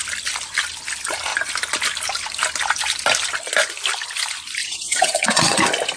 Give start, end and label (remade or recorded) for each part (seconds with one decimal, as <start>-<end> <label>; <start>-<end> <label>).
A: 0.0-4.6 recorded; 4.6-5.6 remade; 5.6-6.0 recorded